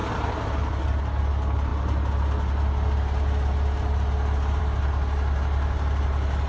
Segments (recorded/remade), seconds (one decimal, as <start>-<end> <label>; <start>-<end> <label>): 0.0-6.5 recorded